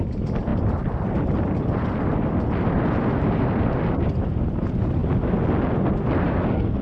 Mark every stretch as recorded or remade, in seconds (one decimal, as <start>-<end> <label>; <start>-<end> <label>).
0.0-6.8 recorded